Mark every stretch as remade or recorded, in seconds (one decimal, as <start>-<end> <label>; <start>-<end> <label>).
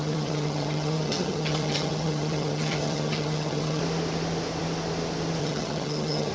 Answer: 0.0-3.8 remade; 3.8-5.4 recorded; 5.4-6.3 remade